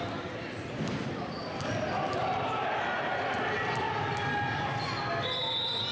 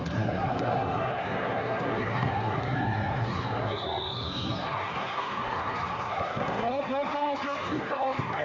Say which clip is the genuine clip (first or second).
first